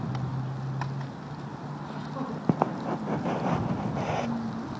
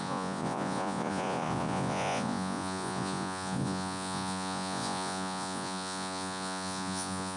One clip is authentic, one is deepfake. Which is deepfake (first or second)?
second